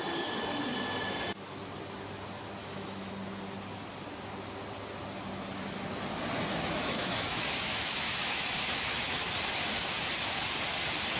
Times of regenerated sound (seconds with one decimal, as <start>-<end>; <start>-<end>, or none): 2.6-3.1; 6.5-9.3